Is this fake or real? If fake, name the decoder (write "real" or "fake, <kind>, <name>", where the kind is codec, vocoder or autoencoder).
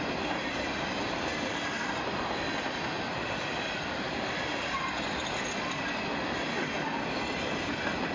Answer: real